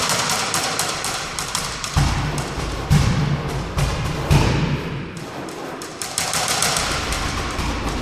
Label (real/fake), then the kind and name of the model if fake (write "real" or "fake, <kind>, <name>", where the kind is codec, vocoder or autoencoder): fake, vocoder, BigVGAN v2